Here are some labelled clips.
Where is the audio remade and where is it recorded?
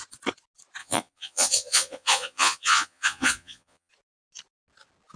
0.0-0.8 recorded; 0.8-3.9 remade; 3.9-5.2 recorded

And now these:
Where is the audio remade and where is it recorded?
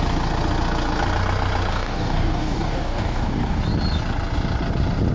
0.0-1.7 recorded; 1.7-3.6 remade; 3.6-5.1 recorded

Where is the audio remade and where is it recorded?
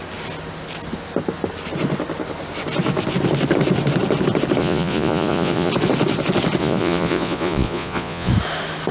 0.0-4.6 recorded; 4.6-5.7 remade; 5.7-6.6 recorded; 6.6-8.3 remade; 8.3-8.9 recorded